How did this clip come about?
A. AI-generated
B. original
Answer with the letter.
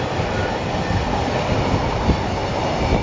B